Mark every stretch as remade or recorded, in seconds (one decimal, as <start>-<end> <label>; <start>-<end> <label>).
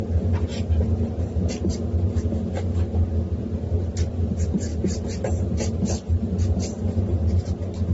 0.0-7.9 recorded